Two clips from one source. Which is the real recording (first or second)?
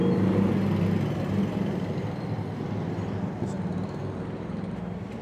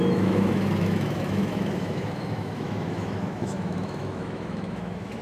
first